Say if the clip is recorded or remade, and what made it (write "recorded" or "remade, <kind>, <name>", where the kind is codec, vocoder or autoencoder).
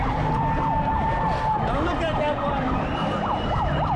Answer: recorded